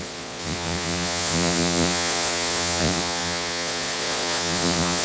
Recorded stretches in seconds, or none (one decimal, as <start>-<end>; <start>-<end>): none

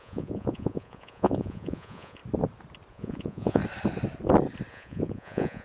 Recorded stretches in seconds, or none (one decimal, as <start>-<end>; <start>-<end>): 2.2-2.9; 3.6-4.7

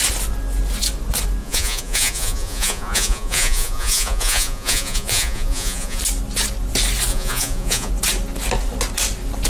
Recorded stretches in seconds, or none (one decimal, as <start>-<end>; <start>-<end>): 0.0-1.4; 6.0-7.1; 7.9-9.5

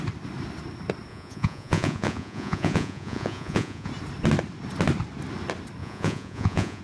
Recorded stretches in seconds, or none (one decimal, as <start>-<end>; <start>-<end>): 0.0-1.1; 3.9-5.8

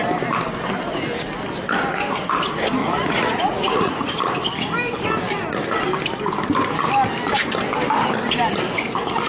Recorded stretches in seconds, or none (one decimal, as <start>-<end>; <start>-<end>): 0.0-2.8; 4.1-9.3

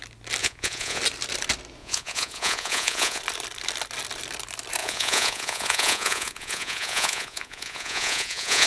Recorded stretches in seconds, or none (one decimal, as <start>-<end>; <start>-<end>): 0.0-0.4; 1.0-1.8; 3.2-4.8

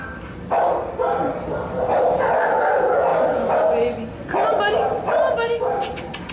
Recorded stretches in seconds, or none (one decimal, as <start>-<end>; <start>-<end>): 0.0-6.3